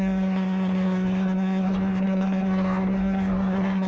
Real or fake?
fake